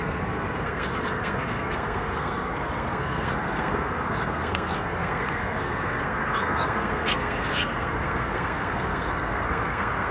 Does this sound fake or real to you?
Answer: fake